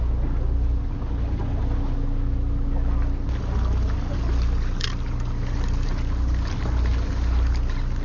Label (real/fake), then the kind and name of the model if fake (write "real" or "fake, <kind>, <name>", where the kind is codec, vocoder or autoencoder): real